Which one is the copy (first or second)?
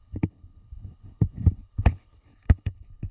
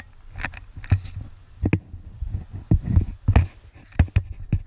first